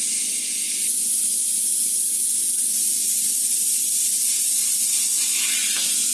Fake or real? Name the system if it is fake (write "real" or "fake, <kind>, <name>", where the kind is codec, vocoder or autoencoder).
real